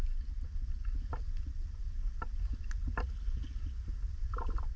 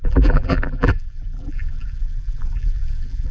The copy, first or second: second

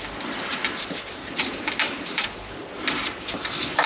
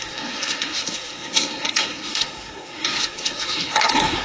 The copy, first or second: second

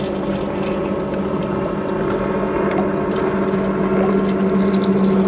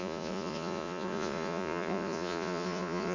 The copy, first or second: second